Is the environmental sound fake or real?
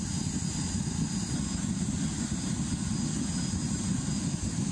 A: real